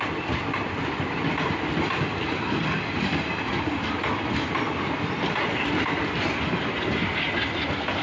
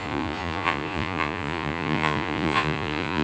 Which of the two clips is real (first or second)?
first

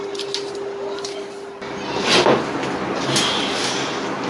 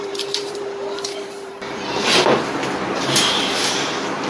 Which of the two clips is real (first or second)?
first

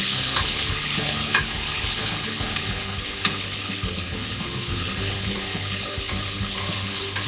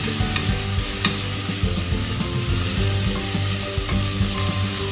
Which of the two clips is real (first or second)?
second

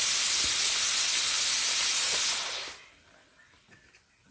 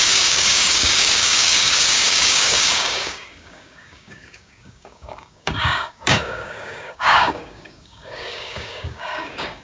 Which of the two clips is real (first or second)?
first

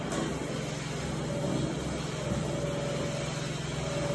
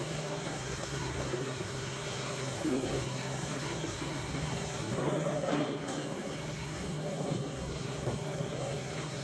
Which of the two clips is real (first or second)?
first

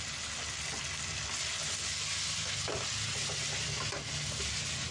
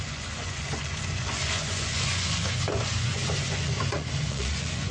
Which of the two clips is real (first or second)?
first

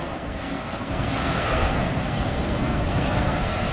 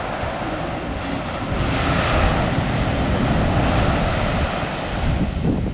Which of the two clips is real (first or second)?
second